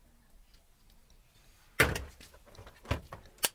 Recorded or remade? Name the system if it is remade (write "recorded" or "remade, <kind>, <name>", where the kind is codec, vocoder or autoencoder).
recorded